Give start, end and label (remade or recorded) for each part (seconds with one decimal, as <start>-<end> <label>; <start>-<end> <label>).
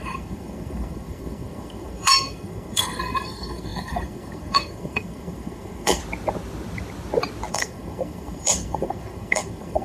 0.0-6.0 remade; 6.0-7.5 recorded; 7.5-9.8 remade